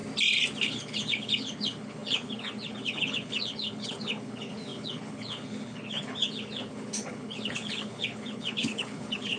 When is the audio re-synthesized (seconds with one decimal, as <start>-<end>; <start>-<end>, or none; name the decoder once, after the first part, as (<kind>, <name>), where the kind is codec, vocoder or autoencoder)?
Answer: 0.6-9.4 (codec, HILCodec)